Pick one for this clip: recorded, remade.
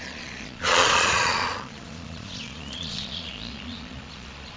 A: remade